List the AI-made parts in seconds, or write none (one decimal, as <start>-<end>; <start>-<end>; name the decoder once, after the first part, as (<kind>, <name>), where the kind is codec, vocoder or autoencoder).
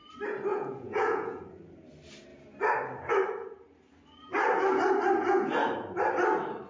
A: 0.5-1.4 (vocoder, Vocos)